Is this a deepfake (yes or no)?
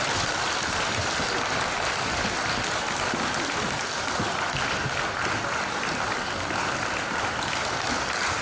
no